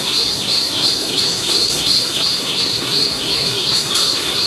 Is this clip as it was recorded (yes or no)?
no